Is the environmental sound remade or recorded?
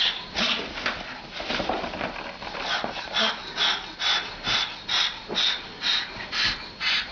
recorded